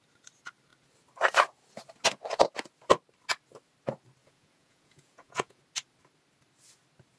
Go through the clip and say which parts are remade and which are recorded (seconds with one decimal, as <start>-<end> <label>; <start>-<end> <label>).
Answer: 0.0-4.2 recorded; 4.2-5.6 remade; 5.6-7.2 recorded